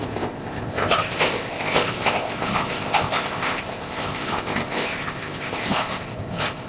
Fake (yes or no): yes